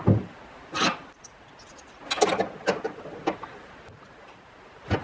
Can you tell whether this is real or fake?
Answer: real